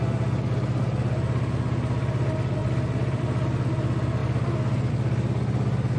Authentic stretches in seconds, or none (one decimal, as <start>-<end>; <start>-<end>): 0.0-6.0